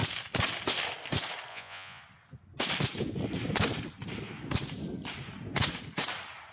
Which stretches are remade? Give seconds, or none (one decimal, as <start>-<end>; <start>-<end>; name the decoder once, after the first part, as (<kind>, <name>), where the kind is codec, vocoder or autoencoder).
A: 1.5-2.0 (vocoder, Vocos)